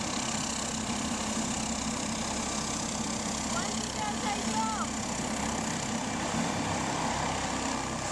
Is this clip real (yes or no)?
yes